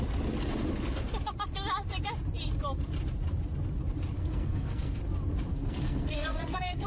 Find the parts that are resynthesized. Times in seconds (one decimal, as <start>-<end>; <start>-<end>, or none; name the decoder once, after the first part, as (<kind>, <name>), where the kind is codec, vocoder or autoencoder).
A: 4.2-5.0 (codec, SNAC); 5.5-6.9